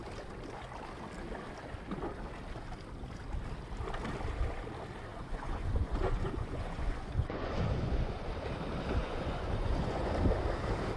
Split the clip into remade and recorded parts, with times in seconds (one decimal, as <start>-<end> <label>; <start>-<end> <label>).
0.0-5.1 recorded; 5.1-8.3 remade; 8.3-9.0 recorded; 9.0-10.1 remade; 10.1-11.0 recorded

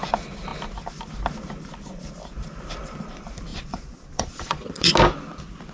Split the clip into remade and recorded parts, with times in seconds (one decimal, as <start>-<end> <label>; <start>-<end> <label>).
0.0-3.5 recorded; 3.5-4.9 remade; 4.9-5.7 recorded